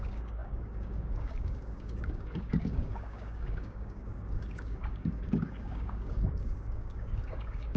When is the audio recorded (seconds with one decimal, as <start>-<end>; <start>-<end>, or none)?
none